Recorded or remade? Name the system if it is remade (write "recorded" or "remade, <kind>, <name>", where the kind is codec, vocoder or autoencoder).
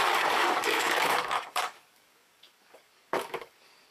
remade, codec, DAC